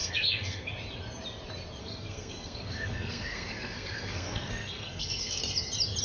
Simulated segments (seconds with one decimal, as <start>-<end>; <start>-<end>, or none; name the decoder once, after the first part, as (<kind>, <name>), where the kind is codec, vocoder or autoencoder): 0.0-0.7 (codec, SNAC); 1.8-5.4